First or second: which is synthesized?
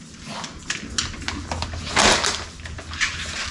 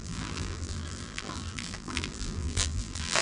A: second